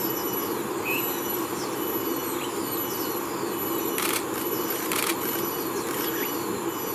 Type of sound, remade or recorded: recorded